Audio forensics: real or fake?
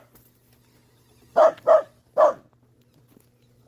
real